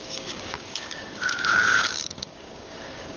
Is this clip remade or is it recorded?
remade